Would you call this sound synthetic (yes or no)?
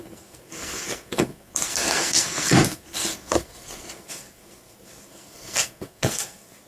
yes